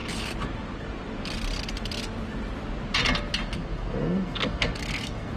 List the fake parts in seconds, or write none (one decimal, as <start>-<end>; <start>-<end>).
3.6-5.4